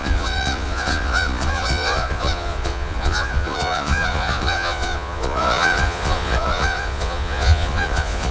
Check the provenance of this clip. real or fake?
fake